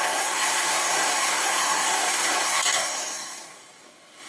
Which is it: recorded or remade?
remade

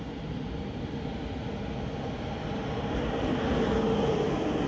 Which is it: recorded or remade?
recorded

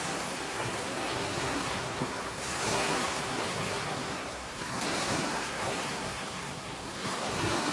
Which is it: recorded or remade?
remade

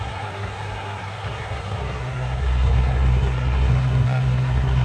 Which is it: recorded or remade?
remade